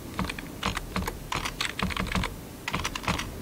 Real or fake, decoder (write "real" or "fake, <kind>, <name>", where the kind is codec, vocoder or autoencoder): fake, vocoder, BigVGAN v2